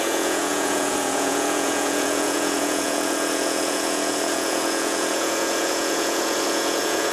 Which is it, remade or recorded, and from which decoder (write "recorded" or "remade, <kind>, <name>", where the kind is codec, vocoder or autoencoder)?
remade, vocoder, Vocos